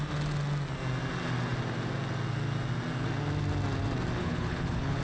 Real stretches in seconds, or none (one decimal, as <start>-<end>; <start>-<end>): 0.0-4.2